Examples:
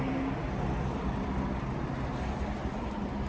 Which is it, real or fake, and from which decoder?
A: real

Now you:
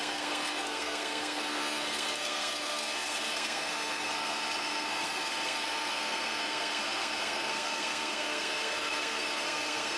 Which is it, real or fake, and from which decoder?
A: fake, codec, SNAC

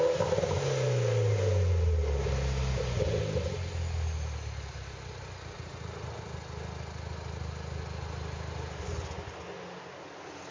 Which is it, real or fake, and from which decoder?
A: real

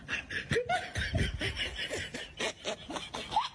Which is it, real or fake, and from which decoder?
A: real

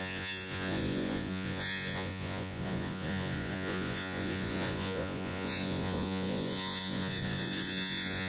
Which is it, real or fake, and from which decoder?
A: fake, vocoder, Vocos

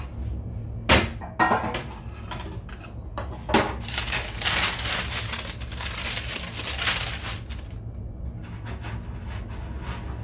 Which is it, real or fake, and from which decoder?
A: real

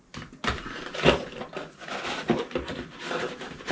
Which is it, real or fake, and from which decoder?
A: real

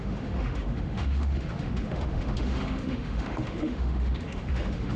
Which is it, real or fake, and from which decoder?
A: fake, autoencoder, DAC-VAE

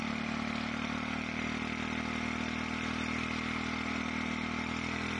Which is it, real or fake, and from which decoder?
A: real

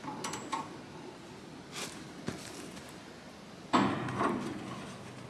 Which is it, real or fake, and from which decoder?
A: real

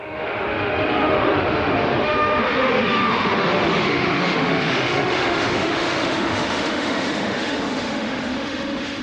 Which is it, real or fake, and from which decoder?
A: fake, autoencoder, DAC-VAE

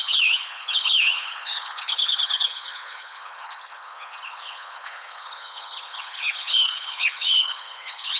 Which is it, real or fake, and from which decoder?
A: fake, codec, HILCodec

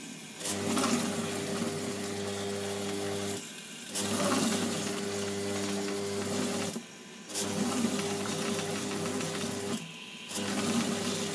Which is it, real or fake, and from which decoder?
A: real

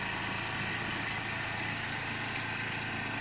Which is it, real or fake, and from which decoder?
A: real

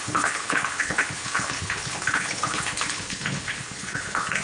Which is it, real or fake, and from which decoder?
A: fake, codec, HILCodec